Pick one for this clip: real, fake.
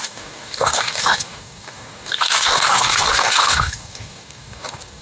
fake